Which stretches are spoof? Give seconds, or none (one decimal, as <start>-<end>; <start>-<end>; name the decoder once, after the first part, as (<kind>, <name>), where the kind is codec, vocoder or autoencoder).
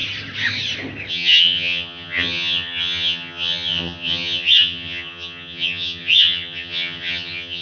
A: 1.1-7.6 (vocoder, HiFi-GAN)